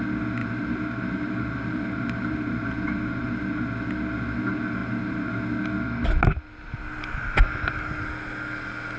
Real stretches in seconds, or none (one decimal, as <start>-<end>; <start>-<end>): 0.0-0.4; 3.3-4.8; 5.3-9.0